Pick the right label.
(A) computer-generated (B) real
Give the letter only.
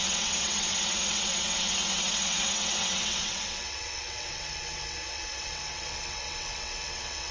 A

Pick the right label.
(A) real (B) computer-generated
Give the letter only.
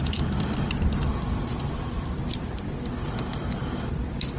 A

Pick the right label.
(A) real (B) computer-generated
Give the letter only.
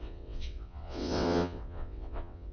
B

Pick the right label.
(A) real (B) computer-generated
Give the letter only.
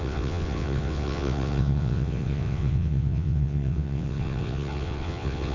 B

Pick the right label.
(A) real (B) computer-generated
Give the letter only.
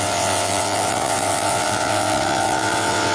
B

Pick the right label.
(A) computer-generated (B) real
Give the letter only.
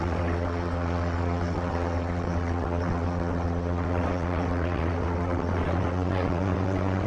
A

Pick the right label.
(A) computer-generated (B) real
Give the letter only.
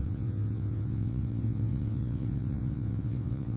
A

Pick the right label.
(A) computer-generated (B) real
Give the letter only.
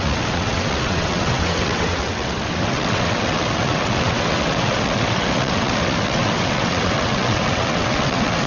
A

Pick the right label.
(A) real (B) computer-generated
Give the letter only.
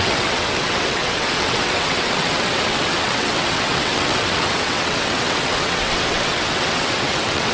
B